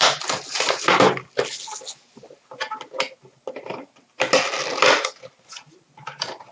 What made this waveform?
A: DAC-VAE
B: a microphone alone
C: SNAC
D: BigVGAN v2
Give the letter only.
B